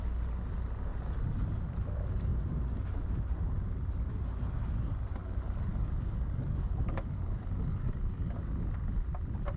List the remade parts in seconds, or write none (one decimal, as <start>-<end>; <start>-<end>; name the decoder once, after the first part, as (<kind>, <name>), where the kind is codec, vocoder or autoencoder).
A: 5.2-8.6 (codec, DAC)